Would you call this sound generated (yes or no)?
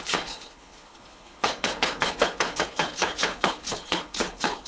yes